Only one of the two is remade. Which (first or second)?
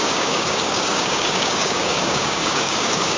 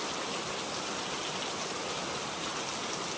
first